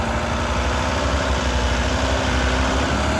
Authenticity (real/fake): real